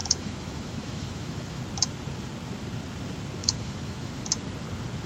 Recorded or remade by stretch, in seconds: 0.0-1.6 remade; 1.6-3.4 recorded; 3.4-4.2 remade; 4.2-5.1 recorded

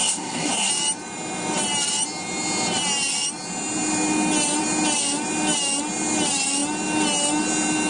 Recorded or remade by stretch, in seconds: 0.0-0.7 remade; 0.7-7.9 recorded

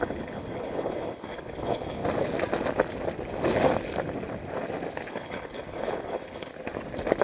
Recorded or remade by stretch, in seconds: 0.0-2.0 remade; 2.0-5.1 recorded; 5.1-6.5 remade; 6.5-7.2 recorded

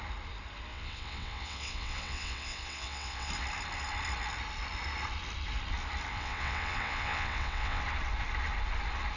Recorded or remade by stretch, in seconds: 0.0-0.7 recorded; 0.7-3.3 remade; 3.3-6.1 recorded; 6.1-7.8 remade; 7.8-9.2 recorded

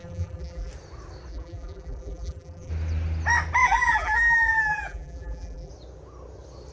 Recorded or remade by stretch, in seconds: 0.0-0.7 remade; 0.7-1.3 recorded; 1.3-2.7 remade; 2.7-3.6 recorded; 3.6-5.7 remade; 5.7-6.7 recorded

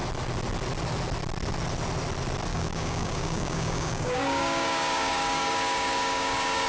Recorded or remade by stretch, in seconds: 0.0-2.5 recorded; 2.5-6.7 remade

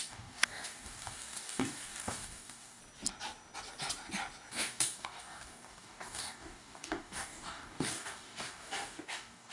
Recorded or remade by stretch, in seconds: 0.0-2.8 remade; 2.8-4.5 recorded; 4.5-9.5 remade